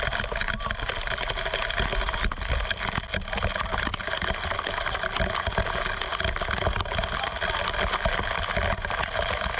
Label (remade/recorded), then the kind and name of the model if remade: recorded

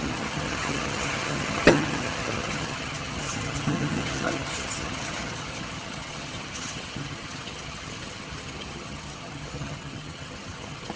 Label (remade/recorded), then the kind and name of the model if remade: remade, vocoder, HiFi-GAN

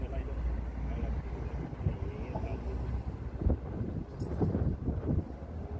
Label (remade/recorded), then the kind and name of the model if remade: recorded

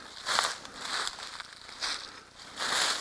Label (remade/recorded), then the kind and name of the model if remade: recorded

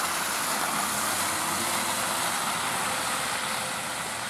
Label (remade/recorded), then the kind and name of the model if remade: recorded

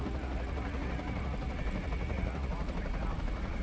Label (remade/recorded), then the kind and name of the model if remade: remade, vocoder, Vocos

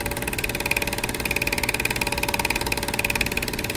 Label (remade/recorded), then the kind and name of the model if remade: recorded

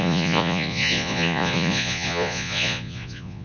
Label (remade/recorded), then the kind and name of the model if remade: remade, vocoder, Vocos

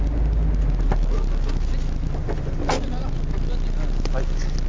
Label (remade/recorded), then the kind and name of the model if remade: recorded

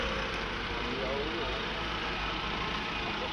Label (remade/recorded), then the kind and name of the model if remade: recorded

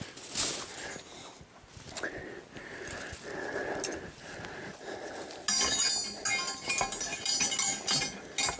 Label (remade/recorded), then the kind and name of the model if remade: recorded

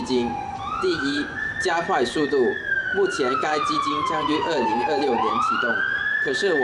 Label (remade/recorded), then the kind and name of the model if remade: remade, vocoder, Vocos